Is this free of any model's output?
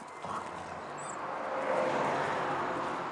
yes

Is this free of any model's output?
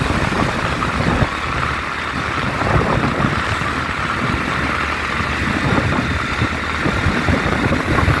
no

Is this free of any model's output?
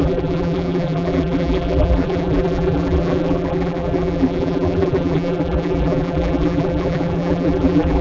no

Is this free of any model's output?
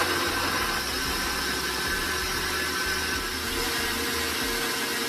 yes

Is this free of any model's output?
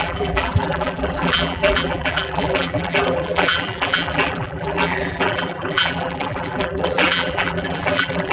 no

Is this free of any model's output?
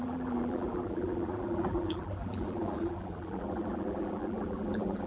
no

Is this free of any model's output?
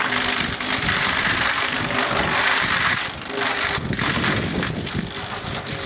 no